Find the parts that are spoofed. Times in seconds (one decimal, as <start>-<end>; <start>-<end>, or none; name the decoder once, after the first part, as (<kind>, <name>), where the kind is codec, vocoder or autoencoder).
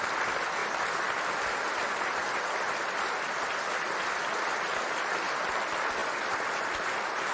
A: none